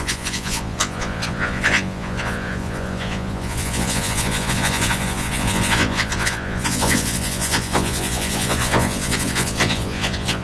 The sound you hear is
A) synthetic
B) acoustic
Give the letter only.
A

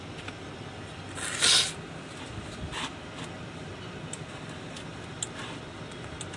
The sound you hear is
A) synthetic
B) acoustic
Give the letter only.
B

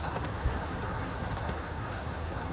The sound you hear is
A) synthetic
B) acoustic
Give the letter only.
A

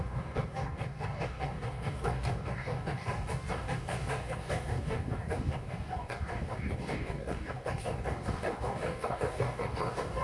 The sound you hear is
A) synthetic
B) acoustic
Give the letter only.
A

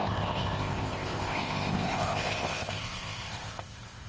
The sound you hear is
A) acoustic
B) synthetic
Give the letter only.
B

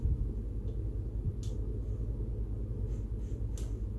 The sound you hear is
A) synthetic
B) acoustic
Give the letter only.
B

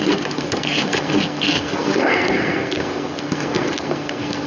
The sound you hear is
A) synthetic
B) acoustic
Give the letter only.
A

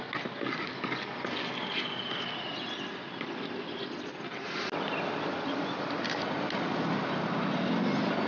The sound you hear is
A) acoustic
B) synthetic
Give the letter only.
A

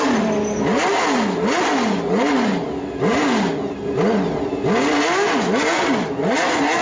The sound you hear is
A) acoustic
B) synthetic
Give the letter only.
A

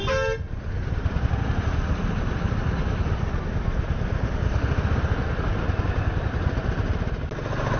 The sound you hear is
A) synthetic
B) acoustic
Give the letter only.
B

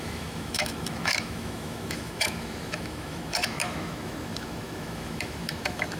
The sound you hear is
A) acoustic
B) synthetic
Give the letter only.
B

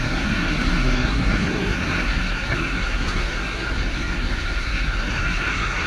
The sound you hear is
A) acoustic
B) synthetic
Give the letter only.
B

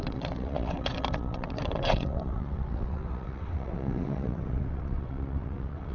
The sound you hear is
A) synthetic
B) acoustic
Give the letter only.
A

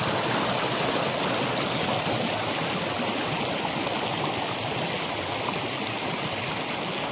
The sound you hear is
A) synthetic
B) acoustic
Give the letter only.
B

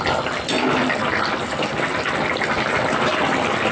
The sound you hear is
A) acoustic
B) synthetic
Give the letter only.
A